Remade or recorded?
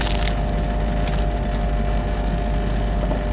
recorded